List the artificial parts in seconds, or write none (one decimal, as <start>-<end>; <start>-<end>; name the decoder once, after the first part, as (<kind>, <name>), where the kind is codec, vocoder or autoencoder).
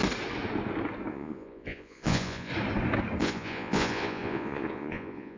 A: 1.1-2.5 (vocoder, Vocos); 3.2-5.4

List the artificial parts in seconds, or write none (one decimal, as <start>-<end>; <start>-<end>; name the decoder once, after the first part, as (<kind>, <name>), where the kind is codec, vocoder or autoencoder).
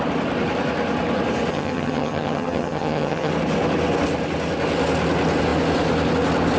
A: 1.5-3.3 (vocoder, HiFi-GAN)